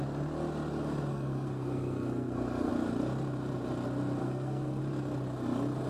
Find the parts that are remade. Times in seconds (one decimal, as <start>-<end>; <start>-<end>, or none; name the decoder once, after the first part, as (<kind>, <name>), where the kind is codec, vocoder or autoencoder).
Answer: 1.1-2.7 (codec, SNAC); 4.2-4.8